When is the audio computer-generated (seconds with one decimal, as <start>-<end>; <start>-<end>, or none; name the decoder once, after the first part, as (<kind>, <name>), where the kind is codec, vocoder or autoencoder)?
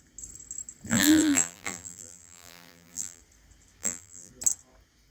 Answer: 0.9-3.2 (vocoder, BigVGAN v2); 3.8-4.3